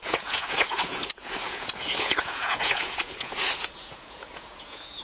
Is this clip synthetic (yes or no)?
yes